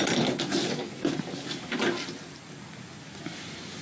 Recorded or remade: recorded